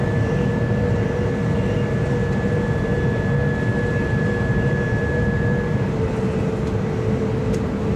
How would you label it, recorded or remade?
recorded